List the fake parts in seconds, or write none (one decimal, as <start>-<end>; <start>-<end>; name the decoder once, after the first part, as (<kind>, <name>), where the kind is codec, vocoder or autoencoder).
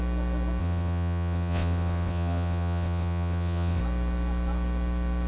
0.6-3.8 (vocoder, WaveNeXt)